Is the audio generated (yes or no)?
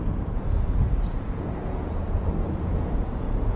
yes